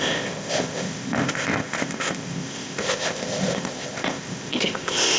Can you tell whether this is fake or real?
fake